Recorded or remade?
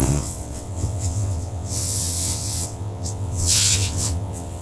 remade